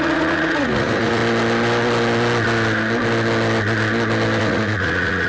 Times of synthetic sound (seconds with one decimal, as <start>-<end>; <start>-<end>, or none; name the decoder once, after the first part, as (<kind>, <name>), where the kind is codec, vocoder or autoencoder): 0.0-1.2 (vocoder, Vocos); 4.4-5.3